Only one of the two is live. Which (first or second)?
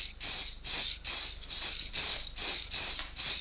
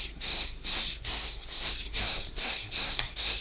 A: first